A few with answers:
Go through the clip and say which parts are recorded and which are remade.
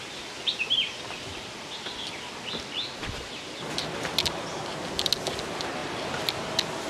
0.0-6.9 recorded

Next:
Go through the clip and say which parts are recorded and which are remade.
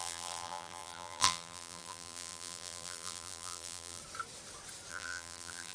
0.0-4.0 remade; 4.0-4.9 recorded; 4.9-5.7 remade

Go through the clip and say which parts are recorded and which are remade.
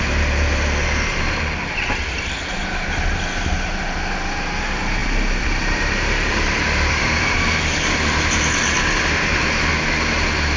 0.0-5.0 recorded; 5.0-8.8 remade; 8.8-10.6 recorded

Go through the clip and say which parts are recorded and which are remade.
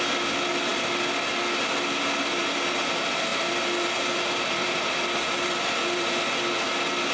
0.0-3.3 recorded; 3.3-6.1 remade; 6.1-7.1 recorded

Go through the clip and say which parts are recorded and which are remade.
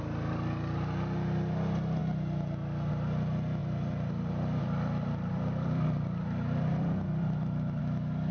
0.0-3.6 recorded; 3.6-7.8 remade; 7.8-8.3 recorded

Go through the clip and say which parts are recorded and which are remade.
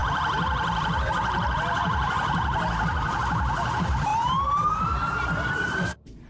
0.0-3.2 remade; 3.2-4.1 recorded; 4.1-6.3 remade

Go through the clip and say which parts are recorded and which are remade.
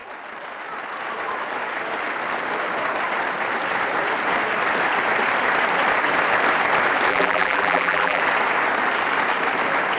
0.0-7.1 recorded; 7.1-8.2 remade; 8.2-10.0 recorded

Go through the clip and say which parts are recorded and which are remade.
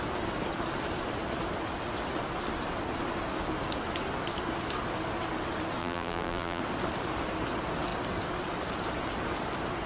0.0-5.8 recorded; 5.8-6.6 remade; 6.6-9.9 recorded